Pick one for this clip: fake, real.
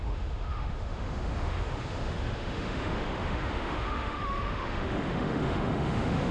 fake